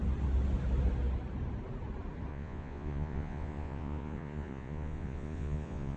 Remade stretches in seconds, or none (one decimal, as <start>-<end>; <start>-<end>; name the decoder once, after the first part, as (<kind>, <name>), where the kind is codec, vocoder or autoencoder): 2.3-6.0 (vocoder, Vocos)